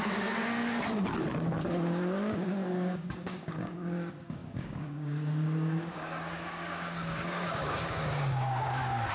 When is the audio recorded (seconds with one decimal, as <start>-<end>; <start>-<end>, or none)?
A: 0.6-1.7